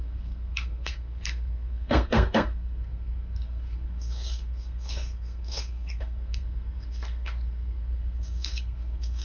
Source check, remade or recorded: remade